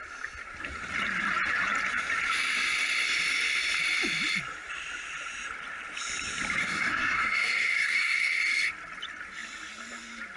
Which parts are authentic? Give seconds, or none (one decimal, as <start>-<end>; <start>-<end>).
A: 0.0-6.6; 8.4-10.4

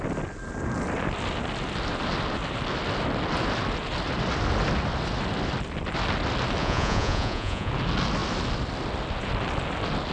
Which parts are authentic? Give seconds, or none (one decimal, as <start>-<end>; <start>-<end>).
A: 0.0-6.6; 7.7-10.1

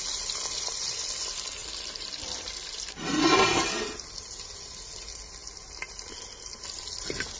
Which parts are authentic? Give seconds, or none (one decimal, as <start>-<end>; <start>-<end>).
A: 0.0-7.4

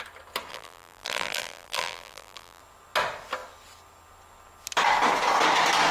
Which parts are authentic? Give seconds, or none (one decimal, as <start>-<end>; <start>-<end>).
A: 0.0-0.5; 2.6-5.9

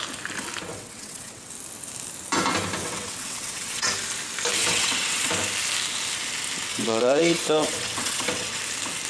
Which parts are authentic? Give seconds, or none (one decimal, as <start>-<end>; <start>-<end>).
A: 0.0-0.7; 1.5-2.8; 3.9-4.6; 5.3-6.7; 8.6-9.1

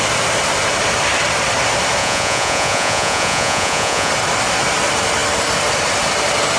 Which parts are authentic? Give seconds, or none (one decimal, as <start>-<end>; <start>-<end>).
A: 0.0-2.0; 4.1-6.6

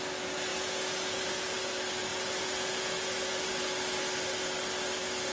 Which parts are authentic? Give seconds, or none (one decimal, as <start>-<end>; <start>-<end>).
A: 0.0-0.5; 1.7-2.1; 3.6-5.3

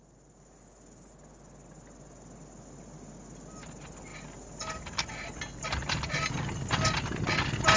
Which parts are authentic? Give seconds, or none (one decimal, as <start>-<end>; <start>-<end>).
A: 0.0-7.8